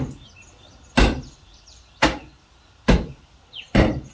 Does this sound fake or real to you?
real